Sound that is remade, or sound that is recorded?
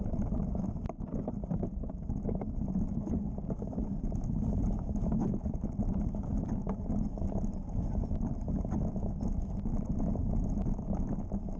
recorded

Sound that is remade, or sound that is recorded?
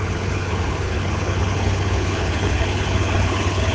remade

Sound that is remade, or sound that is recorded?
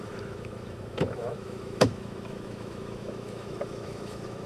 remade